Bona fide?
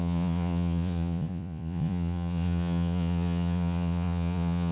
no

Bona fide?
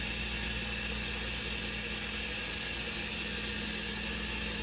yes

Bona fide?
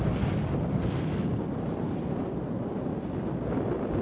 yes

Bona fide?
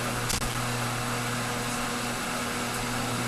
yes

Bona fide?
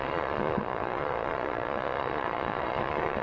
no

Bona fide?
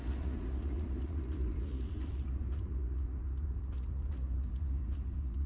no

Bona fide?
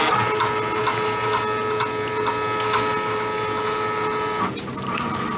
yes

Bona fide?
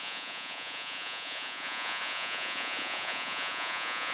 no